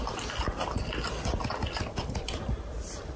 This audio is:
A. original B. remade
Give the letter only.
A